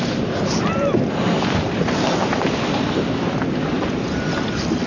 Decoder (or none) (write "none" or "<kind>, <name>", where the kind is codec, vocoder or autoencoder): none